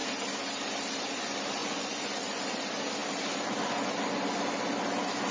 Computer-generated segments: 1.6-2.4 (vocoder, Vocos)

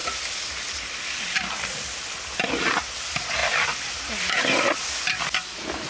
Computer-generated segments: 0.0-3.0 (vocoder, BigVGAN v2); 3.4-4.2

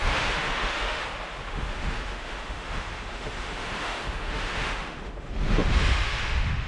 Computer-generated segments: 0.0-1.0 (autoencoder, DAC-VAE); 1.5-6.7

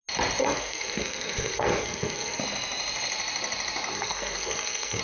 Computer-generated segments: 0.4-2.4 (codec, SNAC); 3.9-5.0

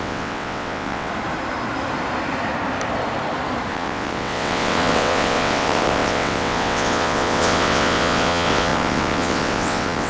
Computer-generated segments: 0.0-1.1 (vocoder, WaveNeXt); 3.7-10.1

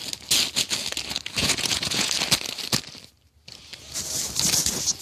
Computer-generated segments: 1.4-2.1 (vocoder, Vocos)